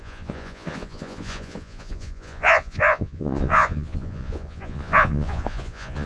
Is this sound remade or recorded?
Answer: remade